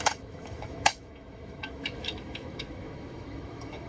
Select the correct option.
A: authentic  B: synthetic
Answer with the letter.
B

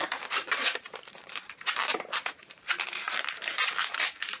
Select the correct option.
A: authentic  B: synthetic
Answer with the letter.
B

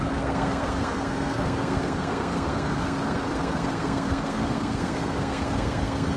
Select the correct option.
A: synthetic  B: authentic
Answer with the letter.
A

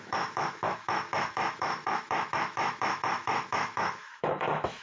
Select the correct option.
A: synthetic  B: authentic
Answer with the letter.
A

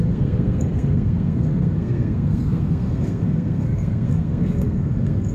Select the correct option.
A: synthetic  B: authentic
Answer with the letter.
A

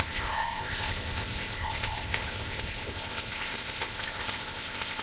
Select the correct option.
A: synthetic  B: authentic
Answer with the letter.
A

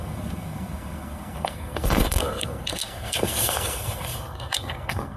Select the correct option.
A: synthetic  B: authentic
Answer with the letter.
A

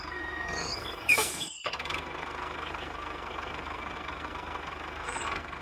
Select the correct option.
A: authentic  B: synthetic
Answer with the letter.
B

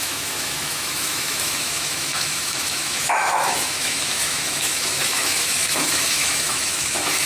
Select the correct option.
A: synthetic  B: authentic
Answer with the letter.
A